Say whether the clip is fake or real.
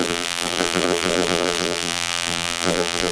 fake